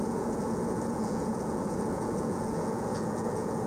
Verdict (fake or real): fake